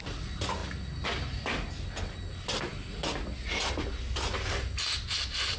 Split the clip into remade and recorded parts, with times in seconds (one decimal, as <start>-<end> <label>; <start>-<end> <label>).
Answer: 0.0-5.6 recorded